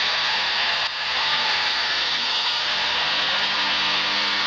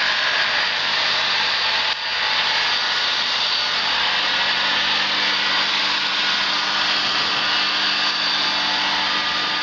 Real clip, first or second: second